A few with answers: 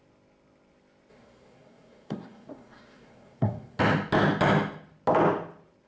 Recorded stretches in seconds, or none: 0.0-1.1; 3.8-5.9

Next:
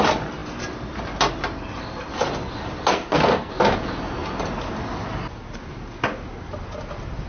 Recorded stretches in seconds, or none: 0.0-2.9; 3.5-7.3